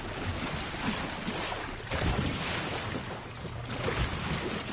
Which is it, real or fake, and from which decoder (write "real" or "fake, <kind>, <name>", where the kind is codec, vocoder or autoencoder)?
real